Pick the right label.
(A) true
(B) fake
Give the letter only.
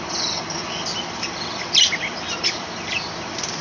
B